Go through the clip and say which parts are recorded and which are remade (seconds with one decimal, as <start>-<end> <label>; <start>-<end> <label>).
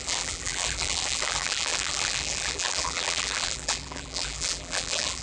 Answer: 0.0-5.2 remade